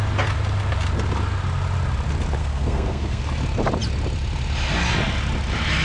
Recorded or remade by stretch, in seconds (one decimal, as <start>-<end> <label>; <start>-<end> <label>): 0.0-2.4 recorded; 2.4-3.2 remade; 3.2-5.8 recorded